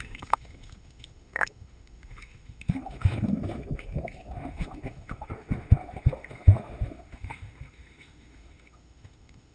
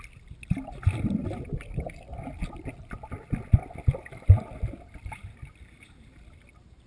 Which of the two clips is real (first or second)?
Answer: second